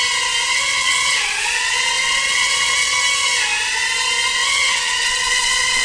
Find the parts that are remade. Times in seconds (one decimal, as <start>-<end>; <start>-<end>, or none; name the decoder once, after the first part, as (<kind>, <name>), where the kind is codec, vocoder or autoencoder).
0.5-3.0 (vocoder, WaveNeXt); 4.3-5.8